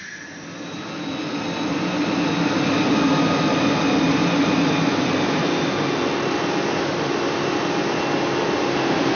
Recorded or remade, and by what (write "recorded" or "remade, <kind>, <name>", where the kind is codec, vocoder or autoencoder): recorded